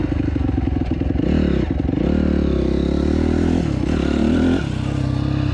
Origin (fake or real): real